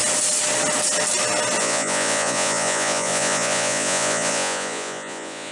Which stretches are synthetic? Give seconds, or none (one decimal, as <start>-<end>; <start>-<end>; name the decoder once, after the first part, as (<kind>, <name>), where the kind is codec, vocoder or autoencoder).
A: 1.6-5.5 (vocoder, Vocos)